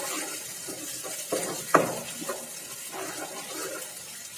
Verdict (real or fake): real